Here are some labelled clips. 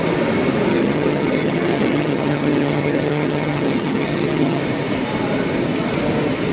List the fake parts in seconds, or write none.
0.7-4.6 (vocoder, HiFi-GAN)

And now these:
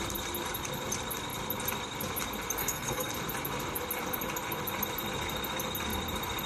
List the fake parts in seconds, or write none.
2.6-3.1 (codec, SNAC)

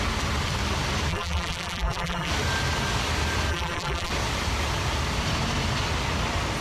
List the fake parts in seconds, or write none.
1.1-2.3 (vocoder, BigVGAN v2); 3.5-4.1

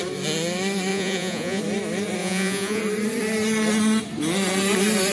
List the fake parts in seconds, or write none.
0.9-1.6 (vocoder, Vocos); 2.2-2.8

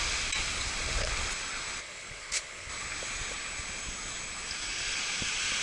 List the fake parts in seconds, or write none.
1.8-2.7 (codec, HILCodec)